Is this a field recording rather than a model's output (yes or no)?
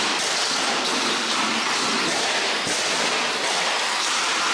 no